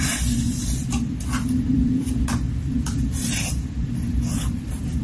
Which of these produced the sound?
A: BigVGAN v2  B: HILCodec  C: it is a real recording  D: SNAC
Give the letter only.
A